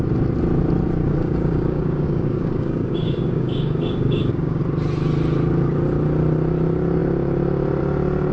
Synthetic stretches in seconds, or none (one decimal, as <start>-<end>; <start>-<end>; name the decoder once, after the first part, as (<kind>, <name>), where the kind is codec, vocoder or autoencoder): 1.0-4.6 (codec, DAC)